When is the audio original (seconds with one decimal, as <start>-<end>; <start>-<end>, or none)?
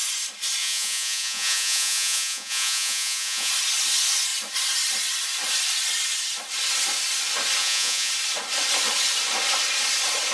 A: 0.0-0.6; 3.5-7.6; 8.1-10.3